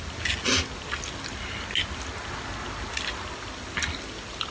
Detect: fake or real real